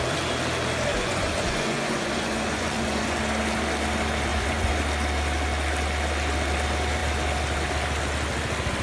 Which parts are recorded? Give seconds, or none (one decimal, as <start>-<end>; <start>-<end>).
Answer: 0.0-0.9; 3.2-4.3; 4.8-8.8